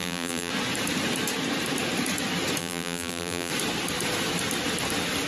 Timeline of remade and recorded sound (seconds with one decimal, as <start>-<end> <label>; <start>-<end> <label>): 0.0-0.5 remade; 0.5-2.6 recorded; 2.6-3.5 remade; 3.5-5.3 recorded